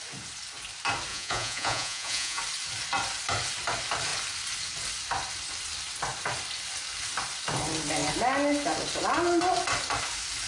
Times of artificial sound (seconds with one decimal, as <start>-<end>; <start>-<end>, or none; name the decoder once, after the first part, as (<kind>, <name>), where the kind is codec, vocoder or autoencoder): 1.1-2.4 (vocoder, Vocos)